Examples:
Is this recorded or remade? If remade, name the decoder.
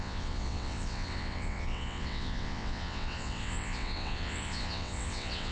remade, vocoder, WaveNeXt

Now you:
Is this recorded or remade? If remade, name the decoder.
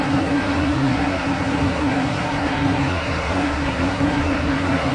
remade, codec, SNAC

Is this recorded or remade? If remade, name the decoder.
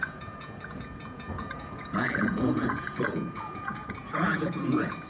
remade, vocoder, Vocos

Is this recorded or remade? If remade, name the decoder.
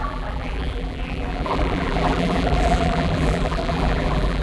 remade, vocoder, BigVGAN v2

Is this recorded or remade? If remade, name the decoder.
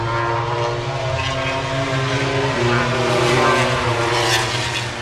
recorded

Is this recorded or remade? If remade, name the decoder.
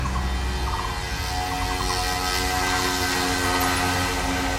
recorded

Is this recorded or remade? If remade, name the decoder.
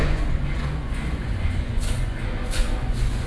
remade, vocoder, Vocos